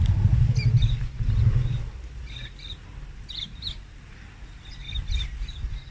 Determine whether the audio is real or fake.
real